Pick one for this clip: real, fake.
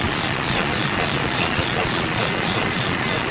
fake